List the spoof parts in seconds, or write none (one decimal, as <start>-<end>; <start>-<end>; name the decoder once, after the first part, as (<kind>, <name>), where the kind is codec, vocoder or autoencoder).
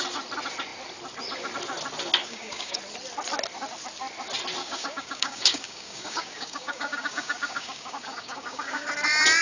2.2-2.8 (codec, DAC); 4.6-8.9